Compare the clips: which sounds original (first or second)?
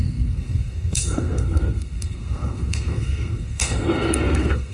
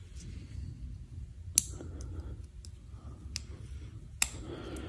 second